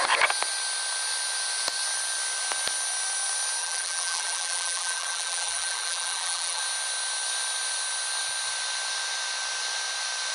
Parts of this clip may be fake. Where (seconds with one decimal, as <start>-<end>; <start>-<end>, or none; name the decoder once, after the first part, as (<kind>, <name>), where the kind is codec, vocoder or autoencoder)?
3.6-6.6 (vocoder, BigVGAN v2)